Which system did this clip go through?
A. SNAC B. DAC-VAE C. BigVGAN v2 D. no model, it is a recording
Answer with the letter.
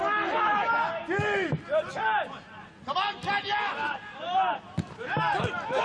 D